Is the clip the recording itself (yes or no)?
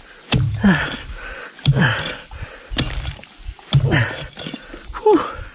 yes